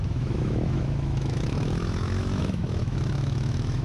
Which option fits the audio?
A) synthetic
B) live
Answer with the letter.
A